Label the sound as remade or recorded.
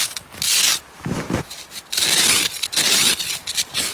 recorded